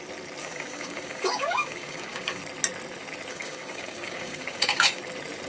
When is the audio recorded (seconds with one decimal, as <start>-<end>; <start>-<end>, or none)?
0.0-0.4; 2.4-3.3; 5.0-5.5

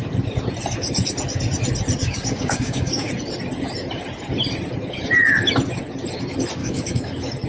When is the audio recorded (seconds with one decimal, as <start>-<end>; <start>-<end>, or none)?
0.0-2.0; 3.1-6.6; 7.1-7.5

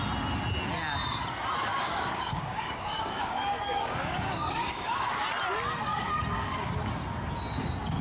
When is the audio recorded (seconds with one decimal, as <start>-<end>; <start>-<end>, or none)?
0.0-1.7; 5.2-5.9; 6.7-8.0

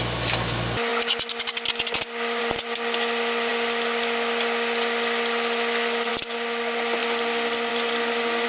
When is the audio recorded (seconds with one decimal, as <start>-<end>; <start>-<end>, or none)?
0.0-8.5

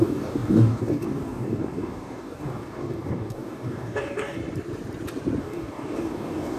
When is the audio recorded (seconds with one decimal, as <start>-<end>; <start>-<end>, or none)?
4.4-5.4

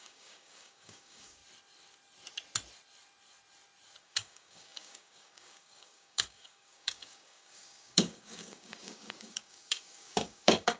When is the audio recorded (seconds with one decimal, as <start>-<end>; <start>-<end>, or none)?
1.4-4.0